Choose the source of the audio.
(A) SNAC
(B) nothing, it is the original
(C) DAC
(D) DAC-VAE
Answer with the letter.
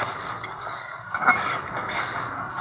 C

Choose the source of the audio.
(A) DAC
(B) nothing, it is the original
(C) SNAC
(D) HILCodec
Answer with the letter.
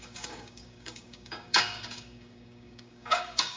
A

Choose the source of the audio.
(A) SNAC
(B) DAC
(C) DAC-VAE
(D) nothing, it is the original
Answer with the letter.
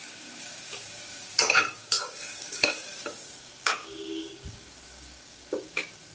B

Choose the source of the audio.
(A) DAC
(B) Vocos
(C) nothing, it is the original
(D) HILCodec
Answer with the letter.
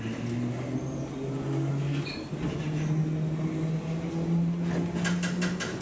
C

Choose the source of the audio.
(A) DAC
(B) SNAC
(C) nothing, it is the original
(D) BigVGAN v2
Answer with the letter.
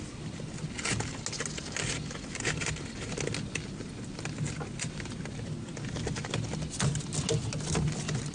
C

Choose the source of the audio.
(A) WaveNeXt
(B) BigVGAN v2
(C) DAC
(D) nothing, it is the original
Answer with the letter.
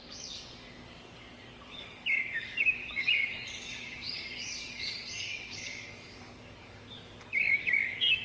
C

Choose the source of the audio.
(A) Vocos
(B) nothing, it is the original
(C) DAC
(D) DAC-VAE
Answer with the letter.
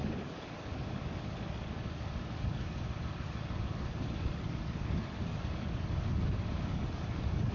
C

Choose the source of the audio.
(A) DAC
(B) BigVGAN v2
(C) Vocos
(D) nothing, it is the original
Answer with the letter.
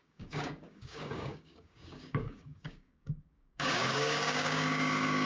A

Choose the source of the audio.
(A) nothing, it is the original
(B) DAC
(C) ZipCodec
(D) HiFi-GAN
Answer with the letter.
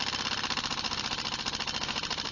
A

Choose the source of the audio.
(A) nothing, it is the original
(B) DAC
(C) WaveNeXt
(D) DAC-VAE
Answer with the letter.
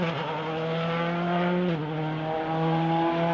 A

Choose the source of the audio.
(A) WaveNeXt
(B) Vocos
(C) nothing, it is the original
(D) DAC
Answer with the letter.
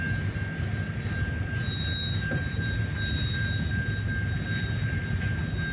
C